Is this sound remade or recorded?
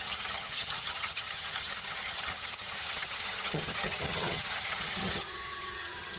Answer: remade